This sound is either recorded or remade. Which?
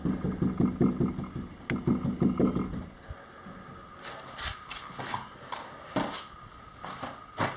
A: recorded